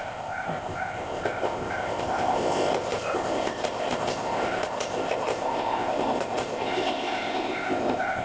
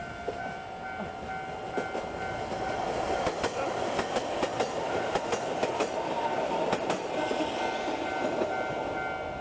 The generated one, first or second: first